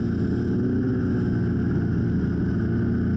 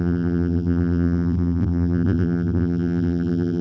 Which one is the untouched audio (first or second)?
first